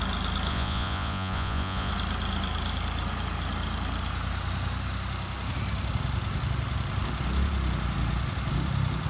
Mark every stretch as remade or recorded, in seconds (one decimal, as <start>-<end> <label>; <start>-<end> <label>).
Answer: 0.0-0.5 recorded; 0.5-1.9 remade; 1.9-9.1 recorded